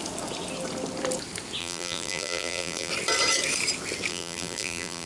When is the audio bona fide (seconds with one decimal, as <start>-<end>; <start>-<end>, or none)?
0.0-1.6; 2.9-4.1